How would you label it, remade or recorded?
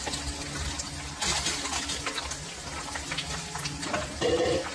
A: recorded